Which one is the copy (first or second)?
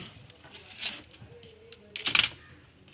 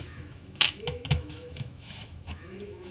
second